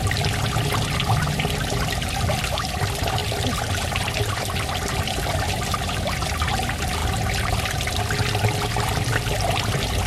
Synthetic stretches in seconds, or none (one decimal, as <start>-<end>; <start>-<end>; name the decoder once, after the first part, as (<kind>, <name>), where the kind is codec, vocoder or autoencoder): none